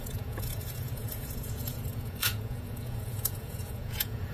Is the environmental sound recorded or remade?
remade